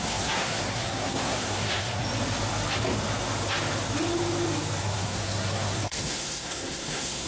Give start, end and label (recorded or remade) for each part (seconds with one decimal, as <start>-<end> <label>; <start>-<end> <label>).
0.0-2.0 remade; 2.0-4.8 recorded; 4.8-7.3 remade